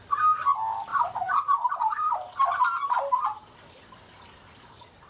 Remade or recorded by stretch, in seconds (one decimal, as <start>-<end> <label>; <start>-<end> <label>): 0.0-0.9 recorded; 0.9-2.1 remade; 2.1-5.1 recorded